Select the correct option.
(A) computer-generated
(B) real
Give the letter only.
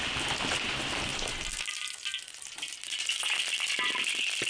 B